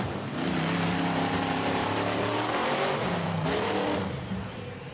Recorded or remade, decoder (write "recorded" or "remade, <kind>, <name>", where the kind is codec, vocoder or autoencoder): remade, vocoder, BigVGAN v2